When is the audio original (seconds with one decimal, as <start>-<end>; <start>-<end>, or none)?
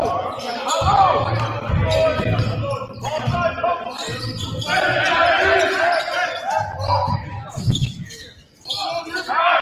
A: 0.0-7.0; 8.3-9.6